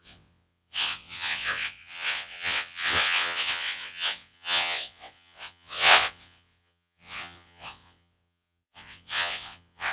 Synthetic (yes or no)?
yes